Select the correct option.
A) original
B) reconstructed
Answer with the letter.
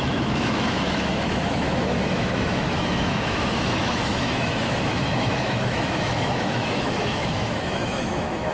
B